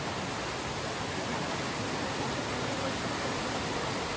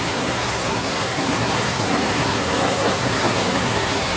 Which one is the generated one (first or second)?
second